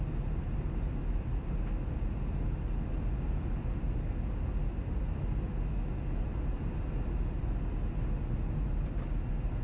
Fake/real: real